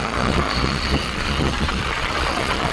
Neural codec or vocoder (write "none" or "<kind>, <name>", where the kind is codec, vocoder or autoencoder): vocoder, Vocos